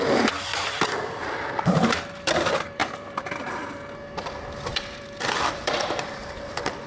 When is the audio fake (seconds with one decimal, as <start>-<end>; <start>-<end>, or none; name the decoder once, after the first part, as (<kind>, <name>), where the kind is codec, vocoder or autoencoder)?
0.0-6.9 (vocoder, BigVGAN v2)